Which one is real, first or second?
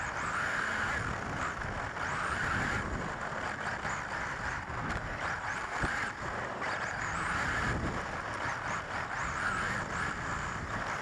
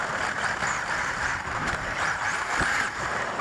first